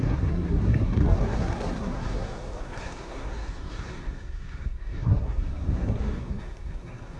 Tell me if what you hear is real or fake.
fake